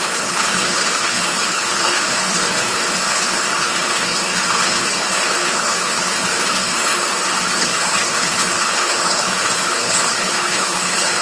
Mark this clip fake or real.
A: fake